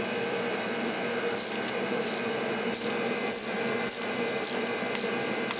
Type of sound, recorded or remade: recorded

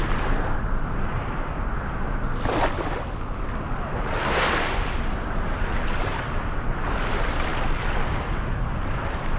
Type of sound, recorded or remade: recorded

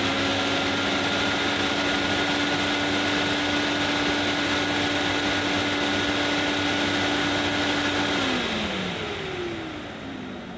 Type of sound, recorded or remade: recorded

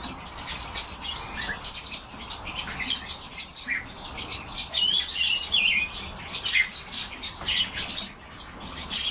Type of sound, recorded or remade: recorded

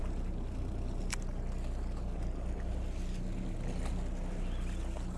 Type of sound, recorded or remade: recorded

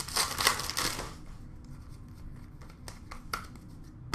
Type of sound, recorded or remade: recorded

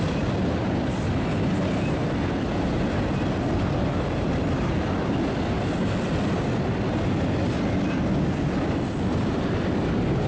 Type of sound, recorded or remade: recorded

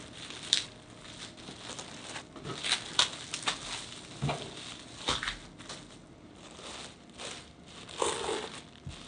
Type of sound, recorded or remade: recorded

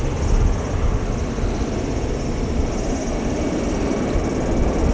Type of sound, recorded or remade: recorded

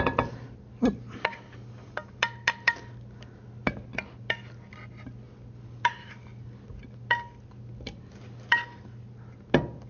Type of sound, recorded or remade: recorded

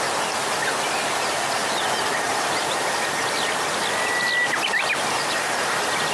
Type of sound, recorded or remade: recorded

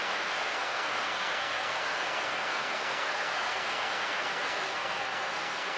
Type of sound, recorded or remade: remade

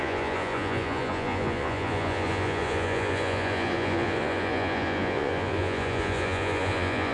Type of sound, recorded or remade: remade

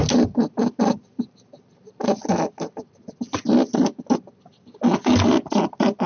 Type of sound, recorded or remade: recorded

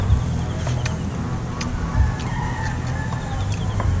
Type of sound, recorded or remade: recorded